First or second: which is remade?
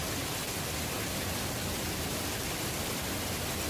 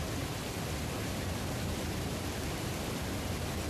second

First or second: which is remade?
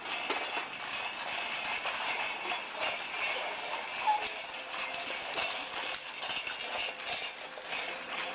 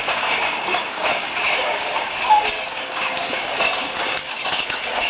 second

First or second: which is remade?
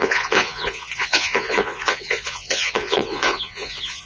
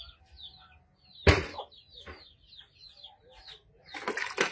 first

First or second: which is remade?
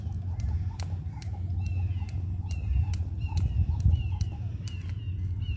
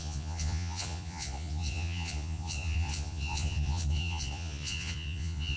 second